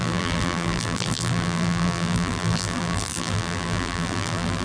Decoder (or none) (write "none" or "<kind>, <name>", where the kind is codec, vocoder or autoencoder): vocoder, BigVGAN v2